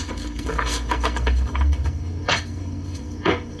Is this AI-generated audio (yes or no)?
yes